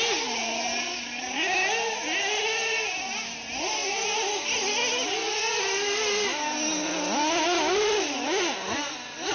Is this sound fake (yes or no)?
no